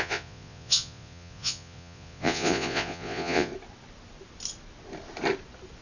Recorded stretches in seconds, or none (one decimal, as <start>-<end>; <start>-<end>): 3.5-5.8